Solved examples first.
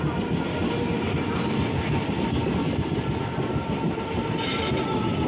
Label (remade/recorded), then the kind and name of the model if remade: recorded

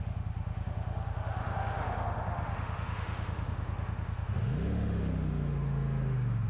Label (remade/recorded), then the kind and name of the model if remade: remade, autoencoder, DAC-VAE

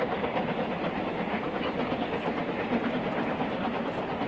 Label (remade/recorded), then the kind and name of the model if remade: recorded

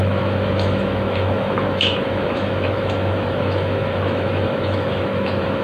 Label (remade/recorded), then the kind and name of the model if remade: remade, autoencoder, DAC-VAE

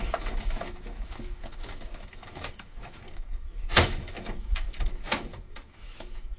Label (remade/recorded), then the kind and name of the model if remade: remade, autoencoder, DAC-VAE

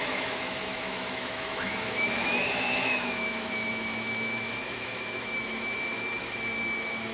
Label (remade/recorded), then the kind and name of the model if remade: remade, autoencoder, DAC-VAE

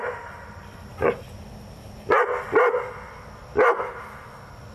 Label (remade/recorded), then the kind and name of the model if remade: recorded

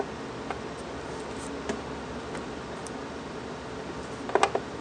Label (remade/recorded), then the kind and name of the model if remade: recorded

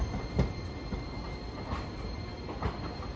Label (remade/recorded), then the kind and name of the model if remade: recorded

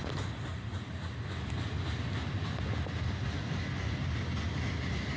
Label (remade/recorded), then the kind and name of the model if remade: recorded